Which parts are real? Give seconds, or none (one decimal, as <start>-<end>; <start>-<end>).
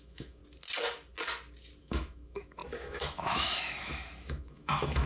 0.4-1.8